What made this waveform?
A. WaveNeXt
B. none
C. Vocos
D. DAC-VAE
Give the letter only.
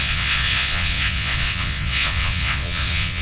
A